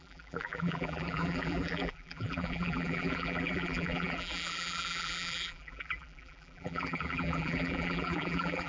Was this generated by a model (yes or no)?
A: yes